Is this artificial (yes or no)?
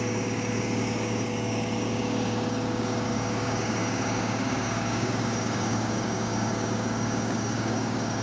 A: yes